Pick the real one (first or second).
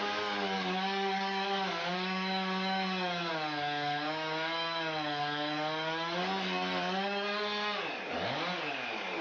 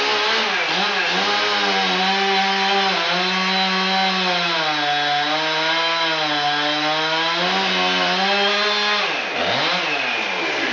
second